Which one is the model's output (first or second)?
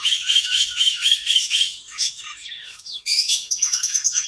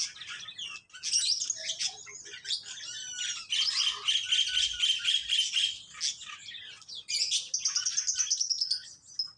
first